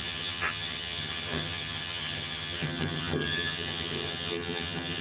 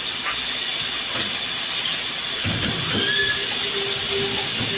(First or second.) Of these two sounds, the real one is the second